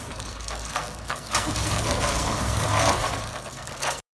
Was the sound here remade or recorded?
remade